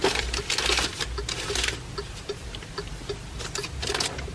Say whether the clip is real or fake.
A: real